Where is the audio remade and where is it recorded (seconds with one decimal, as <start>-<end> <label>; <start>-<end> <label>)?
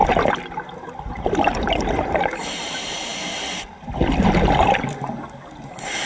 0.0-6.1 recorded